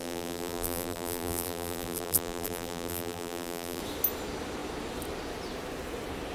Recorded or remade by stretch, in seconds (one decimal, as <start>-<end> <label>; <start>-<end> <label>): 0.0-3.8 remade; 3.8-6.3 recorded